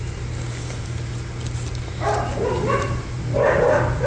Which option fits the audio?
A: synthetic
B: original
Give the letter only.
B